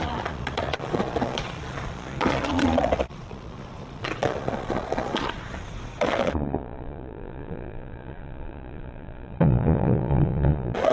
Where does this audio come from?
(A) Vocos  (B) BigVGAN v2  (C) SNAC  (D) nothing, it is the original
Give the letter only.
A